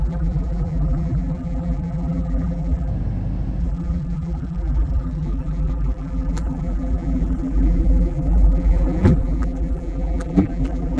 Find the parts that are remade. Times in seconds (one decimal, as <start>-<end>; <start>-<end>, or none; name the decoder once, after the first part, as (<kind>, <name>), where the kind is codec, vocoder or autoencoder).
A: 0.0-2.9 (vocoder, BigVGAN v2); 3.6-11.0